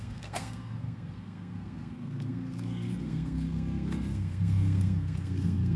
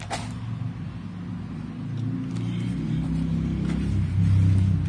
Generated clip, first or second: first